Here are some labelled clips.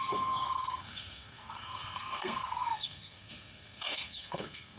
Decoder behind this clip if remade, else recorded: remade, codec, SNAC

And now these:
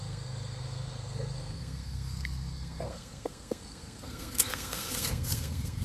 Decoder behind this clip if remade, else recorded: remade, codec, SNAC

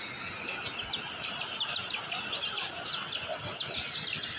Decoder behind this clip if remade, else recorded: recorded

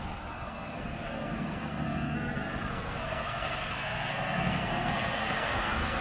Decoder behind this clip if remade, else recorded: remade, codec, SNAC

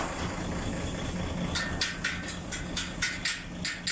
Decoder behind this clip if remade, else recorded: recorded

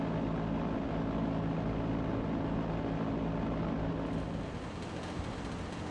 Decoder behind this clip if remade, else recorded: recorded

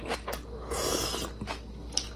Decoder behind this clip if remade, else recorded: recorded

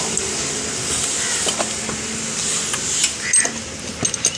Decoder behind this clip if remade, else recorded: recorded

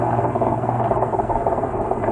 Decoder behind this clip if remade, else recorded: remade, codec, SNAC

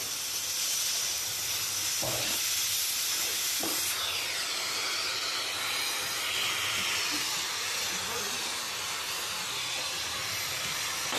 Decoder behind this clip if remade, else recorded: recorded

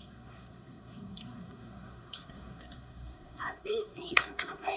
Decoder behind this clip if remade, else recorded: remade, codec, SNAC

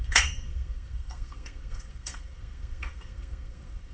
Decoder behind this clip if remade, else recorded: remade, codec, SNAC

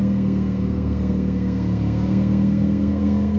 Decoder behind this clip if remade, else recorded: remade, codec, SNAC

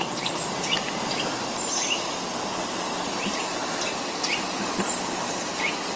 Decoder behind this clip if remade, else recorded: recorded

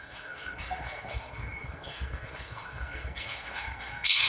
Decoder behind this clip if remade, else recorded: remade, codec, SNAC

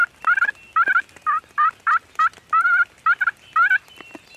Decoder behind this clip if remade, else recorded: recorded